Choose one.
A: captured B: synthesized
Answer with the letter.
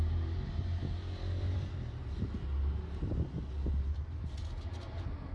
A